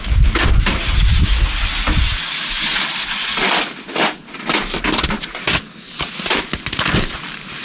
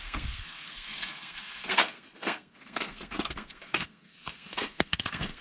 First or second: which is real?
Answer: first